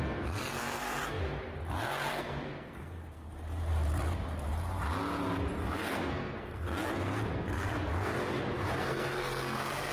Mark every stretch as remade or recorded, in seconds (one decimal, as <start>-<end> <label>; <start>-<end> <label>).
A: 0.0-1.2 remade; 1.2-2.1 recorded; 2.1-3.3 remade; 3.3-5.7 recorded; 5.7-8.1 remade; 8.1-8.8 recorded; 8.8-9.9 remade